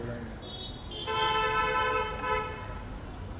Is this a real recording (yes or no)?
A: yes